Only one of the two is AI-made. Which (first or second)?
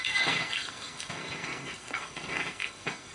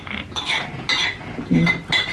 first